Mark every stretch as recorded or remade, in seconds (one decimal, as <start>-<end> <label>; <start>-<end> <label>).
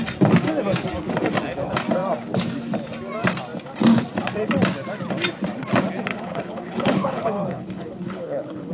0.0-6.1 recorded; 6.1-8.7 remade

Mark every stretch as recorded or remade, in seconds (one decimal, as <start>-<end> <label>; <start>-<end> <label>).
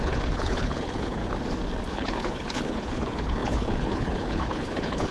0.0-1.2 remade; 1.2-1.9 recorded; 1.9-5.1 remade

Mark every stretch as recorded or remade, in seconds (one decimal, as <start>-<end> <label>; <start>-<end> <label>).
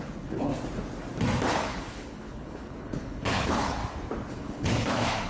0.0-0.5 remade; 0.5-1.5 recorded; 1.5-3.8 remade; 3.8-4.3 recorded; 4.3-5.3 remade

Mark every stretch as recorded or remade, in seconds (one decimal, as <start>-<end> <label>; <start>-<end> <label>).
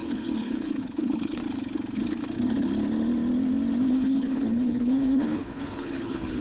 0.0-1.4 remade; 1.4-3.9 recorded; 3.9-6.4 remade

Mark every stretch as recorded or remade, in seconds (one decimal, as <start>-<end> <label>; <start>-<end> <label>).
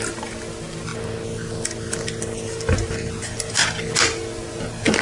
0.0-5.0 recorded